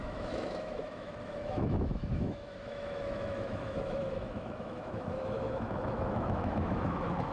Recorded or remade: remade